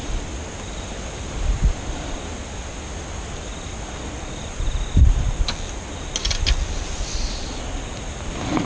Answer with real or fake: real